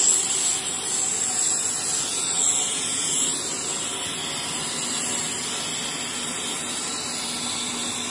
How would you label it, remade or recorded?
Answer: recorded